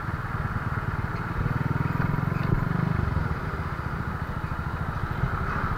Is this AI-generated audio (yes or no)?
no